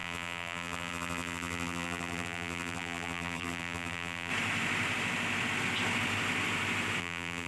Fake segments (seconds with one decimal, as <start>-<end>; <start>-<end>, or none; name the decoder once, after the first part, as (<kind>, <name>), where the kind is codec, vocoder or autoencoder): 0.0-4.3 (vocoder, BigVGAN v2); 7.0-7.5